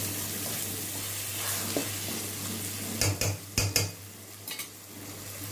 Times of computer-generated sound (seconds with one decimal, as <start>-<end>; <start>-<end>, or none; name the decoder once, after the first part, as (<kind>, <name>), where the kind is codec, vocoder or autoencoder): none